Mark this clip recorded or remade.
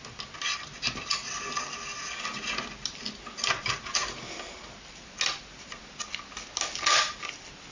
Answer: recorded